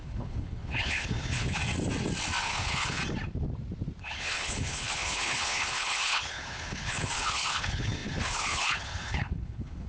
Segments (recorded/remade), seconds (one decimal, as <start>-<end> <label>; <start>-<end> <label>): 0.0-1.6 remade; 1.6-2.4 recorded; 2.4-3.0 remade; 3.0-4.0 recorded; 4.0-9.9 remade